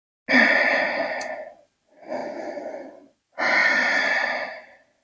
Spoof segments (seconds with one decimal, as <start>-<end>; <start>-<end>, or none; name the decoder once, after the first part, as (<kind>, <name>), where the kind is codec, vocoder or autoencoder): none

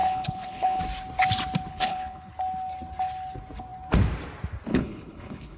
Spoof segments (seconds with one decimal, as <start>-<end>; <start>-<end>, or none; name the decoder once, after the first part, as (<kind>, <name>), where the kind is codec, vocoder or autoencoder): 0.0-0.8 (codec, HILCodec); 1.7-2.3; 4.7-5.6

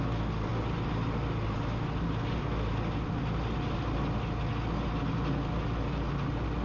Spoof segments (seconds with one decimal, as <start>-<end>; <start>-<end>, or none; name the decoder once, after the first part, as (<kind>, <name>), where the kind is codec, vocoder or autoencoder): none

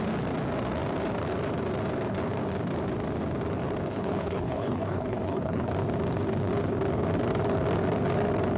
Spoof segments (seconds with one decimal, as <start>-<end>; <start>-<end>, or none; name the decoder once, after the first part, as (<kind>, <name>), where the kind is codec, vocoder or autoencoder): 3.9-5.7 (codec, HILCodec)

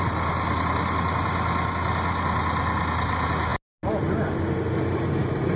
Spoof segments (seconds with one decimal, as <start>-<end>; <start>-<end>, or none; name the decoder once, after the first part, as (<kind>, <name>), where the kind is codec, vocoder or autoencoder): none